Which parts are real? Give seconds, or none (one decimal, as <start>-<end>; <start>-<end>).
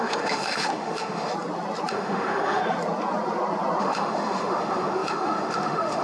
1.3-1.9; 2.6-3.8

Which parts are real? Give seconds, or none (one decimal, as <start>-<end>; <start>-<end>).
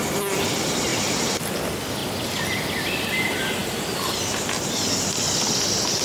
0.0-6.0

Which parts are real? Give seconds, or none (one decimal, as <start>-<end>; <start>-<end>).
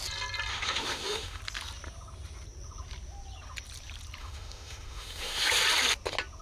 0.0-0.5; 1.4-4.2; 5.5-6.4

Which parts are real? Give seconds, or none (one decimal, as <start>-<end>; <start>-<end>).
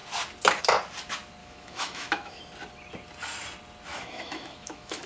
0.0-1.4; 2.4-3.9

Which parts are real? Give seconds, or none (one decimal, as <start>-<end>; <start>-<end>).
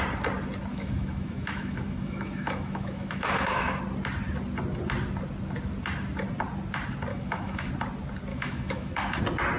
0.0-0.7; 3.8-7.1; 7.7-8.3; 9.2-9.6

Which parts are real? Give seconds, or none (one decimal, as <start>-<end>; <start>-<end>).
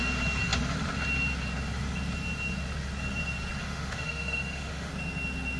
0.0-3.6; 4.9-5.6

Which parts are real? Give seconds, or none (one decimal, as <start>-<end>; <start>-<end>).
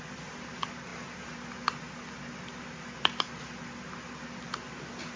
0.0-5.2